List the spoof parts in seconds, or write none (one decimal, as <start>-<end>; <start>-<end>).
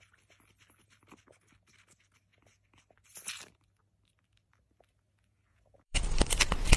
5.5-6.0